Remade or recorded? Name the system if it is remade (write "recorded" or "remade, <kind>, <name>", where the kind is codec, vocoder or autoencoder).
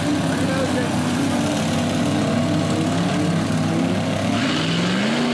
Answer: recorded